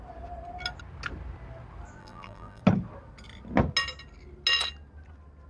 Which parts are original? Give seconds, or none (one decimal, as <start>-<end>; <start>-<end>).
0.0-2.0; 2.6-5.5